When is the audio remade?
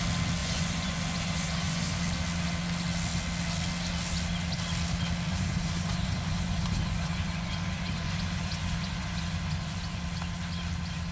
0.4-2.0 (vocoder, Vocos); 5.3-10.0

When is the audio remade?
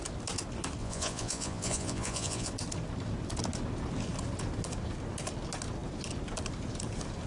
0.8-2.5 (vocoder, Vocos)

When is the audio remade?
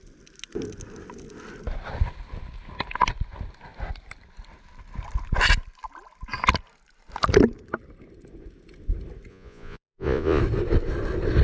9.3-10.4 (vocoder, Vocos)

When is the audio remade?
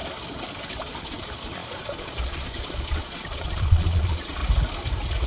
1.0-4.4 (vocoder, Vocos)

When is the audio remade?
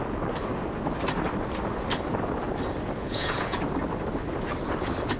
3.0-3.6 (vocoder, Vocos)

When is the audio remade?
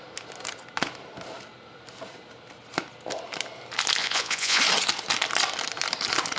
4.0-4.6 (vocoder, Vocos)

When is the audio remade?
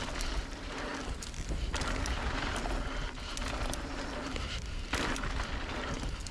none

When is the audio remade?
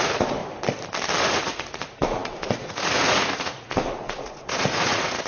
0.0-0.4 (vocoder, Vocos); 1.2-5.3